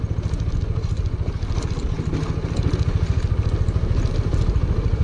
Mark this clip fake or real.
real